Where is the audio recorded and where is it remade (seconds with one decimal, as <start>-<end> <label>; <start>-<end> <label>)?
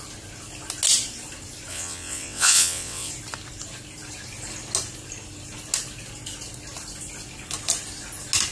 0.0-1.7 recorded; 1.7-3.1 remade; 3.1-8.5 recorded